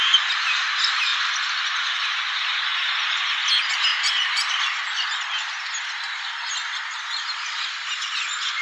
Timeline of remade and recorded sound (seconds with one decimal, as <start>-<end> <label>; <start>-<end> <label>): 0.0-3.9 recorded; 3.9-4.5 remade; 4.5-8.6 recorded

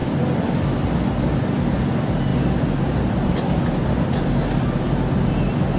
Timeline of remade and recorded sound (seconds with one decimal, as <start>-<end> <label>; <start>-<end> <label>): 0.0-5.8 recorded

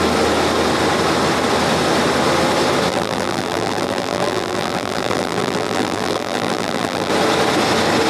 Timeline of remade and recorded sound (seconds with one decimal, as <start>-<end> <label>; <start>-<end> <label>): 0.0-2.9 recorded; 2.9-7.1 remade; 7.1-8.1 recorded